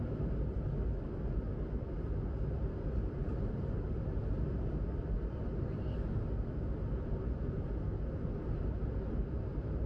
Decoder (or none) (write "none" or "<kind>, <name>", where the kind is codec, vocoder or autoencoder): none